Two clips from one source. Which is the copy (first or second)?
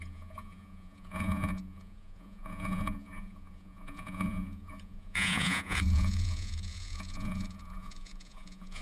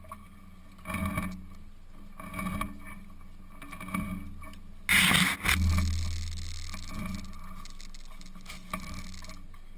first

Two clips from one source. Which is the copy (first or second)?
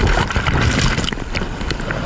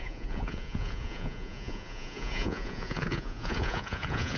second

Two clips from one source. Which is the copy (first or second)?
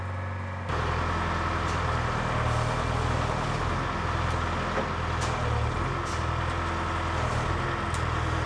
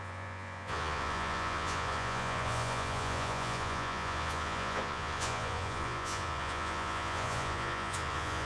second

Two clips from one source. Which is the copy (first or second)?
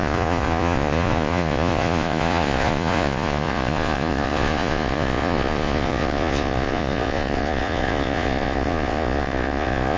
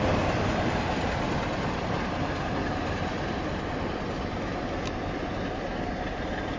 first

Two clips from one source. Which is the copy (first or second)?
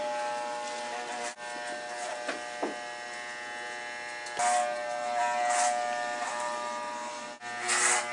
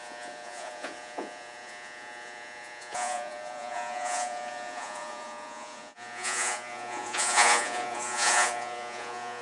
second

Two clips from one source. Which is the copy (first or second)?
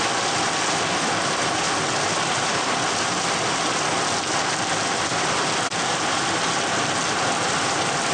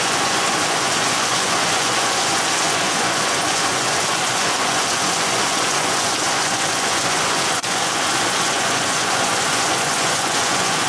second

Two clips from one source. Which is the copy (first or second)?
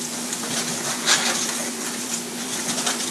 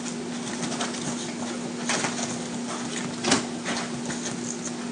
first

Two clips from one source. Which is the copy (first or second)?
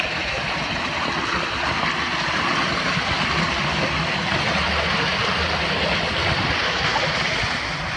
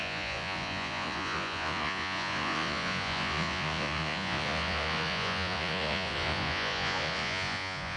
second